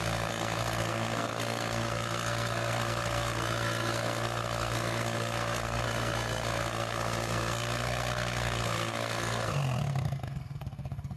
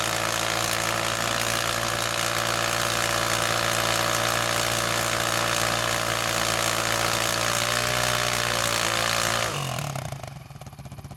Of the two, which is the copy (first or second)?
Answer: first